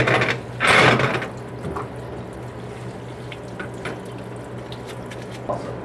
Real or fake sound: real